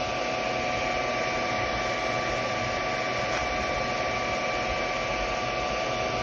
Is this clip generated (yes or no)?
no